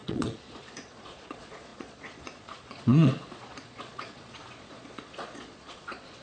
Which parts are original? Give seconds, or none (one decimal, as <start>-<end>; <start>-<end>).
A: none